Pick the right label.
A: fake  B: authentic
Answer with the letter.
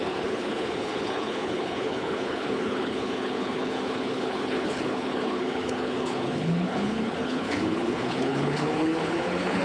A